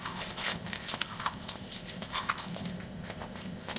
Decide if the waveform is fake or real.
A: fake